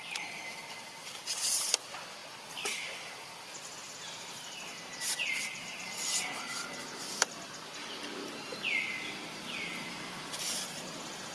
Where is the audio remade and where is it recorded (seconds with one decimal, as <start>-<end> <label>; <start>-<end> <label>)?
0.0-11.3 recorded